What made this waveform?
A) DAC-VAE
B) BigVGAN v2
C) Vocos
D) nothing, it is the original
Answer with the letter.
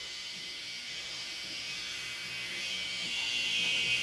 A